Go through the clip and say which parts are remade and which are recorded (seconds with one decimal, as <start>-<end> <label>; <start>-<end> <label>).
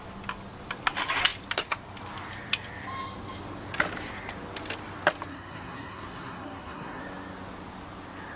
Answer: 0.0-5.3 recorded; 5.3-7.0 remade; 7.0-8.4 recorded